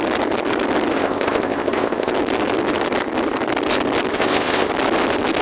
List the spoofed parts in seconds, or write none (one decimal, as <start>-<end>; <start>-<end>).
0.9-2.1; 4.1-4.7